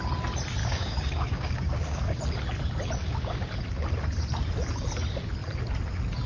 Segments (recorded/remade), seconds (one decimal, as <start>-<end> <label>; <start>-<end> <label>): 0.0-0.6 recorded; 0.6-2.2 remade; 2.2-3.0 recorded; 3.0-3.5 remade; 3.5-6.3 recorded